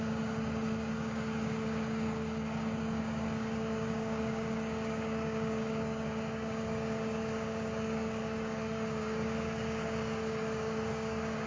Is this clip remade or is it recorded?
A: remade